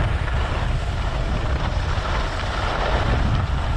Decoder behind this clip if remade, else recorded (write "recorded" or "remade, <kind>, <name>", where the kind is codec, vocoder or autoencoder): remade, vocoder, BigVGAN v2